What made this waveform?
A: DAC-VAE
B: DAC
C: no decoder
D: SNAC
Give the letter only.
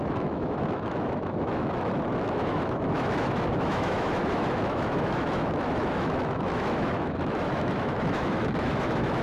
A